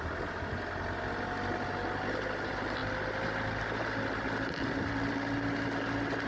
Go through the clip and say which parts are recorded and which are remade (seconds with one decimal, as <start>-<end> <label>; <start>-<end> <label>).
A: 0.0-6.3 recorded